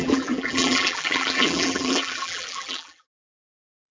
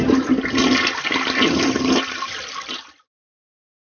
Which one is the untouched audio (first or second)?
second